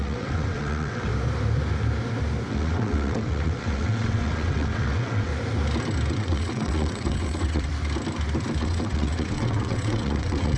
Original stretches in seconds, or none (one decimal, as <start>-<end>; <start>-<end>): 1.1-2.5; 5.3-6.1; 7.7-8.6